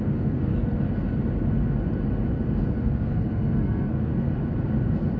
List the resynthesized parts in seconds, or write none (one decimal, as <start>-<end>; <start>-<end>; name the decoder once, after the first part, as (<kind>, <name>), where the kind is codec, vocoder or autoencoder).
0.0-0.5 (codec, SNAC); 2.8-4.1